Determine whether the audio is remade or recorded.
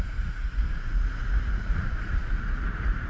remade